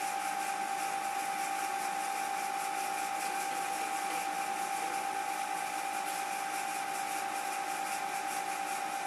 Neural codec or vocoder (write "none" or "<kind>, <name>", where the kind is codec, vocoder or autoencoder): none